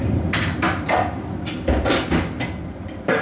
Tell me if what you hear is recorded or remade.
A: recorded